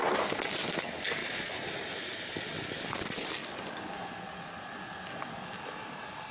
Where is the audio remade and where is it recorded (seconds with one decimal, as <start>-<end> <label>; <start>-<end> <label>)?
0.0-1.2 recorded; 1.2-2.7 remade; 2.7-6.3 recorded